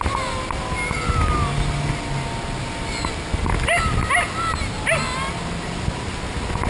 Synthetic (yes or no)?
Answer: no